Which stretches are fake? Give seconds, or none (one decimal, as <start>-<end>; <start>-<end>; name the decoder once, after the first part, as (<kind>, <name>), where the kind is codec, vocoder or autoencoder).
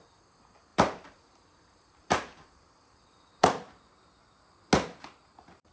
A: 0.7-4.1 (vocoder, BigVGAN v2)